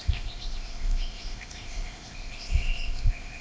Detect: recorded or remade remade